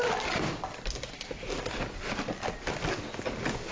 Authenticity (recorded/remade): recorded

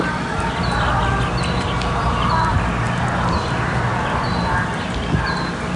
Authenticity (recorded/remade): recorded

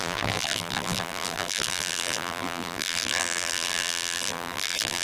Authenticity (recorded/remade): remade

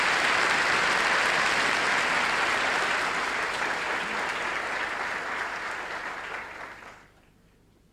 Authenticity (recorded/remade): recorded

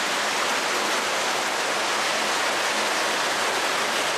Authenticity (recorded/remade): recorded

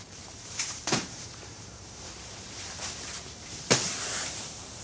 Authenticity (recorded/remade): remade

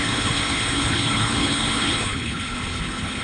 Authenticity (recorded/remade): remade